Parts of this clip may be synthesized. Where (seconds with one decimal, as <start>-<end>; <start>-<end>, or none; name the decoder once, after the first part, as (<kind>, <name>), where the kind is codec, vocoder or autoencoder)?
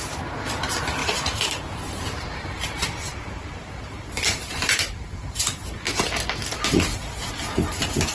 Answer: 1.0-5.9 (vocoder, BigVGAN v2)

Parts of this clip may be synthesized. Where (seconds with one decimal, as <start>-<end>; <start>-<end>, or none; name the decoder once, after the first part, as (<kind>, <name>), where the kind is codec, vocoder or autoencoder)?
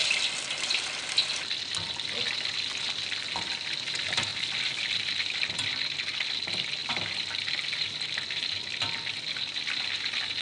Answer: 4.3-4.8 (vocoder, BigVGAN v2); 6.8-8.6